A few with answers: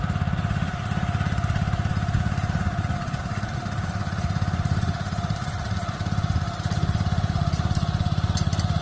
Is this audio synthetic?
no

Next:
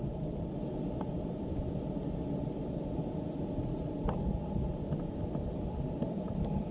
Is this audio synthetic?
no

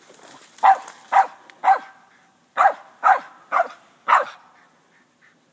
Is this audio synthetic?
no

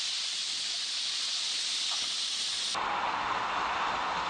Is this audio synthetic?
no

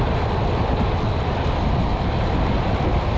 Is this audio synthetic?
no